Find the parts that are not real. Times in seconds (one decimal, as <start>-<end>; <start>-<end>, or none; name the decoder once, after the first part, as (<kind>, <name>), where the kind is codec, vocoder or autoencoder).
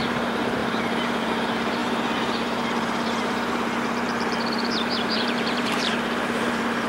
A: 0.0-6.9 (vocoder, BigVGAN v2)